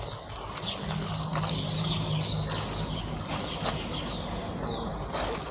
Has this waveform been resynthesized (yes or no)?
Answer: no